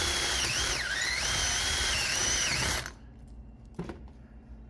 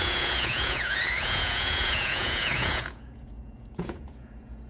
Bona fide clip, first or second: first